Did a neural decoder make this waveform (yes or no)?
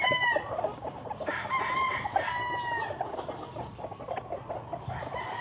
no